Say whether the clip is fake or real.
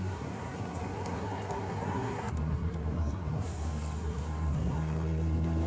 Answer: fake